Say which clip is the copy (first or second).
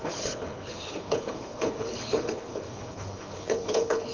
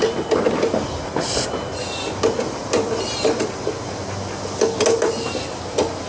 first